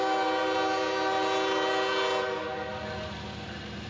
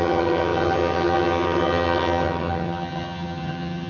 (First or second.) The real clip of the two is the first